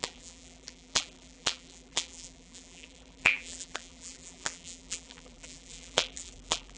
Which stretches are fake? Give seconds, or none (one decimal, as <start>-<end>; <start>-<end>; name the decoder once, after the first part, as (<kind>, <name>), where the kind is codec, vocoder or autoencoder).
0.0-6.8 (vocoder, BigVGAN v2)